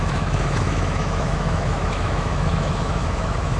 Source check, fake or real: fake